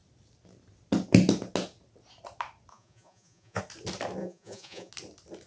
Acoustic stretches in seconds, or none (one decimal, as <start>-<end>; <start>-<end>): 0.0-2.7; 3.6-4.2; 4.9-5.5